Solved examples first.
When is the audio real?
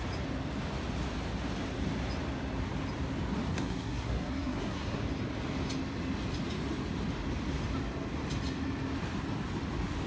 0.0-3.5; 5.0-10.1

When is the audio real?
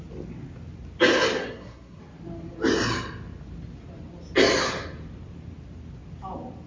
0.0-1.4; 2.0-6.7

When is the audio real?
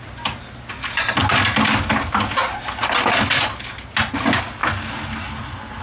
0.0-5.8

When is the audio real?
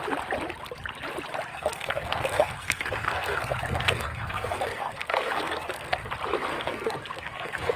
0.0-1.5; 6.1-6.5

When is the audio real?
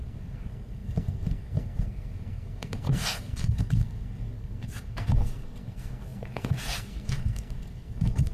none